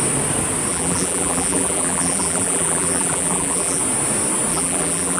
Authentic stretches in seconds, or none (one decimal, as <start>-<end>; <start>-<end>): 0.0-0.7; 3.8-4.5

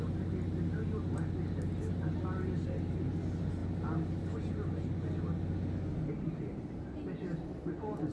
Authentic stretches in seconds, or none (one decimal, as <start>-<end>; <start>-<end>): 0.0-8.1

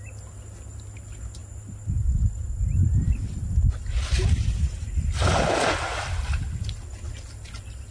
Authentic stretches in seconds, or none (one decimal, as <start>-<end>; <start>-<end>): 0.0-7.9

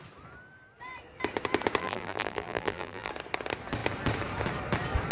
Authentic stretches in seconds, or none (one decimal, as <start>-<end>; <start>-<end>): 0.0-1.8; 3.1-5.1

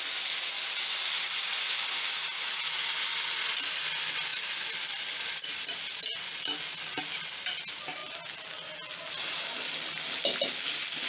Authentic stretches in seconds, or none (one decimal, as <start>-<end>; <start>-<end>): 0.0-11.1

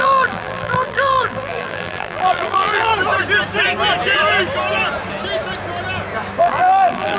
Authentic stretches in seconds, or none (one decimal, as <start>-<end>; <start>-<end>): 2.9-6.4

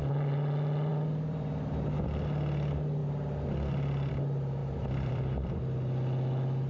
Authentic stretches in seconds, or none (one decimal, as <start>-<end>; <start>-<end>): 0.0-0.9; 1.5-4.6; 5.6-6.7